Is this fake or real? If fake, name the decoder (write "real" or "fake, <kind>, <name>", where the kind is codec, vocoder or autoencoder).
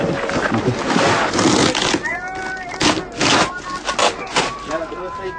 real